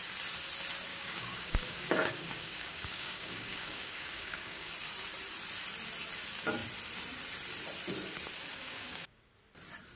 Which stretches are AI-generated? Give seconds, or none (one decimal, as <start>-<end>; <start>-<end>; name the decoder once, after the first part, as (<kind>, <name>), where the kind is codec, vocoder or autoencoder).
0.9-4.7 (codec, DAC); 8.5-9.3